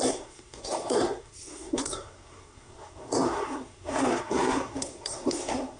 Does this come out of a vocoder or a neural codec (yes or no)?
yes